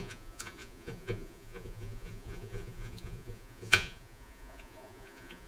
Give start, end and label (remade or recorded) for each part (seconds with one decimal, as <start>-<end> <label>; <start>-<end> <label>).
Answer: 0.0-5.5 remade